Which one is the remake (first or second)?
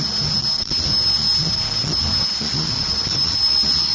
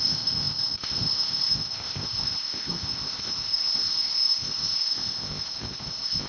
second